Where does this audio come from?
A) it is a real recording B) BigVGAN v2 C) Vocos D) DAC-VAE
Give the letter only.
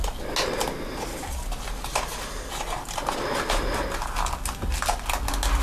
A